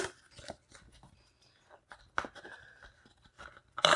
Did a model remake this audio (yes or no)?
no